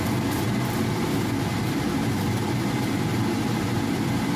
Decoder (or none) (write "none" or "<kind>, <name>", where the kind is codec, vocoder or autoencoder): vocoder, BigVGAN v2